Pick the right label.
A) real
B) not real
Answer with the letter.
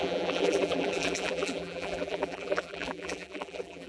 B